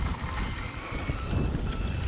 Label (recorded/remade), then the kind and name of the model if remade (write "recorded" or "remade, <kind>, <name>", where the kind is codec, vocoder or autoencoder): remade, vocoder, BigVGAN v2